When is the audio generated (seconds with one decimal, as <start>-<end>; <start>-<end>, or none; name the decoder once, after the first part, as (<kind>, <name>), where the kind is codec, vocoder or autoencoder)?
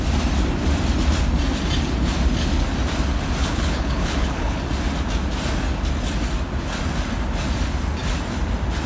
3.4-4.6 (codec, HILCodec)